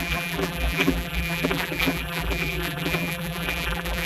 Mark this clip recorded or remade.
remade